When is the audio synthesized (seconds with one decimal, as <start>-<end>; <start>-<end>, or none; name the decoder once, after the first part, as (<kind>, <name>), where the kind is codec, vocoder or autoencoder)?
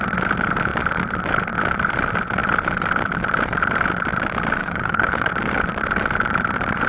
4.6-5.3 (codec, HILCodec)